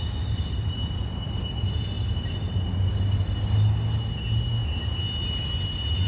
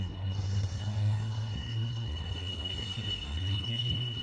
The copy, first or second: second